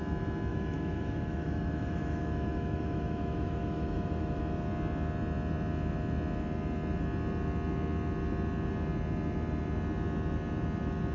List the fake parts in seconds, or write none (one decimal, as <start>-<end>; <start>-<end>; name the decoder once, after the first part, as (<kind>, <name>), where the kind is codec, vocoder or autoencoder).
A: 0.5-4.4 (autoencoder, DAC-VAE)